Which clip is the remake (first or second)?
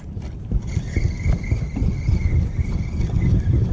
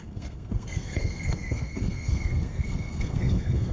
second